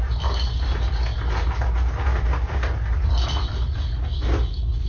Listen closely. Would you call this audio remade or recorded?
recorded